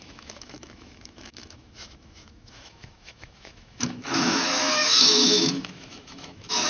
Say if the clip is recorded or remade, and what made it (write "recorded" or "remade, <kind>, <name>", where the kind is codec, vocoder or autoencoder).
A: remade, autoencoder, DAC-VAE